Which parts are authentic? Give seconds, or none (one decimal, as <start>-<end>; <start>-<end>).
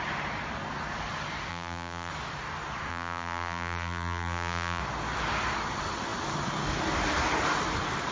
0.0-1.5; 2.1-2.9; 4.8-8.1